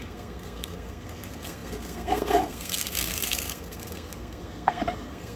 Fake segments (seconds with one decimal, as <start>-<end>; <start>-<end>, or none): 0.0-5.4